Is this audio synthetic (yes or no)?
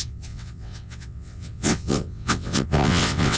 yes